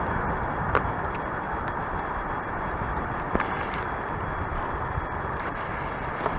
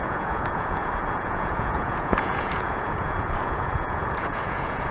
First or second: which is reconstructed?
second